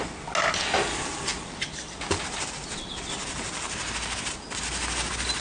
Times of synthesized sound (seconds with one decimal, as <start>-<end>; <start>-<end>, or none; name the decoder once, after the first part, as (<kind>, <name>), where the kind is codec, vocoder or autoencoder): none